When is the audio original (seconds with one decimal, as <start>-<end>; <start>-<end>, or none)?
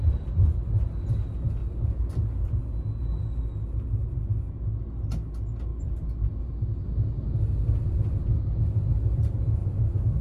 0.0-10.2